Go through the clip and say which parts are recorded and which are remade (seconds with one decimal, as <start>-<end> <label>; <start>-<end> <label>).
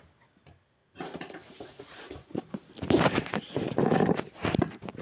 0.0-0.8 recorded; 0.8-2.5 remade; 2.5-5.0 recorded